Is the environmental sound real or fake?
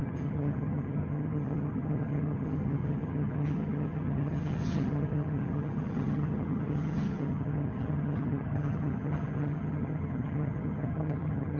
fake